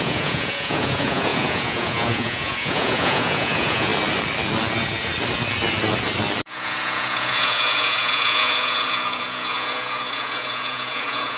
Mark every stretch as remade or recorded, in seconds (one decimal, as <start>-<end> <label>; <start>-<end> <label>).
0.0-3.9 remade; 3.9-6.4 recorded; 6.4-11.4 remade